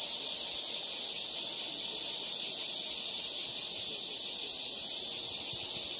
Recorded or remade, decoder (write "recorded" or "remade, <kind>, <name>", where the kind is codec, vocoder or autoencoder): recorded